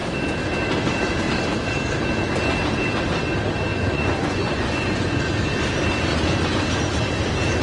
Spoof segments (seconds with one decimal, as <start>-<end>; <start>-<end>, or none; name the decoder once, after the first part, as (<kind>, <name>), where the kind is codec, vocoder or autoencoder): 3.7-5.3 (vocoder, Vocos); 6.1-6.6